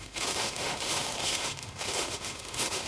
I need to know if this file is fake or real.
fake